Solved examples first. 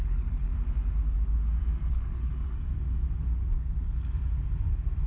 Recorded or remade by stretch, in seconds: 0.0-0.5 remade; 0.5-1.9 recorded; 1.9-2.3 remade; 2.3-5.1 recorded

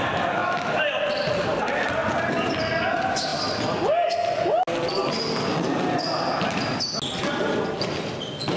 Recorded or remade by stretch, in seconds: 0.0-8.6 recorded

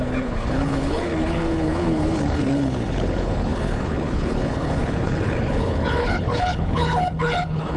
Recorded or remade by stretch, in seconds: 0.0-7.8 remade

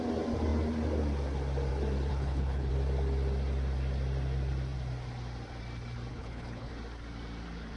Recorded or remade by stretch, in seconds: 0.0-2.1 recorded; 2.1-2.7 remade; 2.7-6.1 recorded; 6.1-6.7 remade; 6.7-7.8 recorded

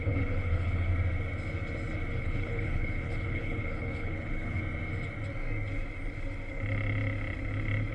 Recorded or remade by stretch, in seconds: 0.0-0.9 remade; 0.9-2.2 recorded; 2.2-4.6 remade; 4.6-7.9 recorded

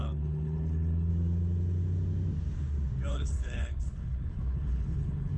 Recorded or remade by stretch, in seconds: 0.0-1.1 remade; 1.1-3.1 recorded; 3.1-5.4 remade

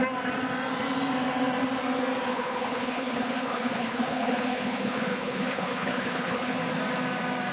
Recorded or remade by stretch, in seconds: 0.0-2.3 recorded; 2.3-6.6 remade; 6.6-7.5 recorded

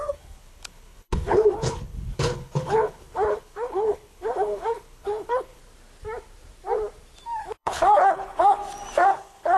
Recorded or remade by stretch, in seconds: 0.0-5.6 remade; 5.6-7.4 recorded; 7.4-8.6 remade; 8.6-9.1 recorded; 9.1-9.6 remade